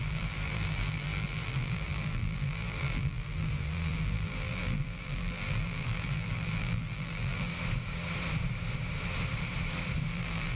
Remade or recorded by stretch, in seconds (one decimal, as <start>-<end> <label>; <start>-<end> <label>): 0.0-7.5 remade; 7.5-10.1 recorded; 10.1-10.6 remade